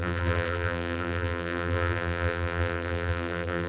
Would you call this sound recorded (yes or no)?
no